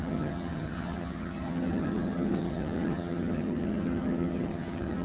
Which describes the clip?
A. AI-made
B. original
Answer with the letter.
A